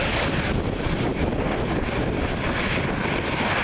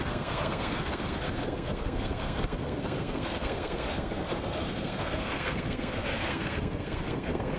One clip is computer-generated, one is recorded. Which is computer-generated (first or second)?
second